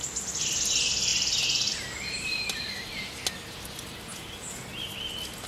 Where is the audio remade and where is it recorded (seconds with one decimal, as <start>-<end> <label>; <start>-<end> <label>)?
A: 0.0-5.5 recorded